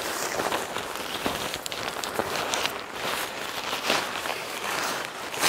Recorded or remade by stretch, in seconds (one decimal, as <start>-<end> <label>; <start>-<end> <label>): 0.0-4.3 recorded; 4.3-5.1 remade; 5.1-5.5 recorded